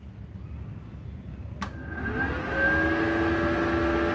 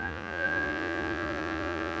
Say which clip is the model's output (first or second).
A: second